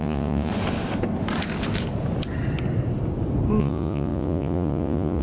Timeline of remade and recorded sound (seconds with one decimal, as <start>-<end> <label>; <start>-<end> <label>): 0.0-0.5 remade; 0.5-3.6 recorded; 3.6-5.2 remade